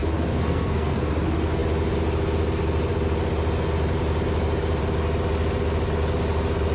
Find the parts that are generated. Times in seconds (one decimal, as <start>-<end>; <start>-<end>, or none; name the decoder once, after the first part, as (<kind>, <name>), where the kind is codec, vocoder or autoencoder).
0.0-1.1 (codec, SNAC)